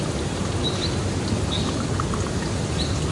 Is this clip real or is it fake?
real